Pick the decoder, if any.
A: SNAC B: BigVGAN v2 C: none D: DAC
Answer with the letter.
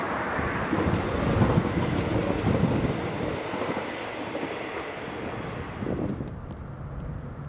C